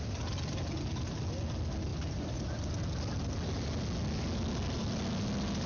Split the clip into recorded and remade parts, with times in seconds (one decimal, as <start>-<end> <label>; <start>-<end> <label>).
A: 0.0-5.7 recorded